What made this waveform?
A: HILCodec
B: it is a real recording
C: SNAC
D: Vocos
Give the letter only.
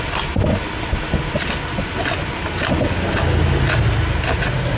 B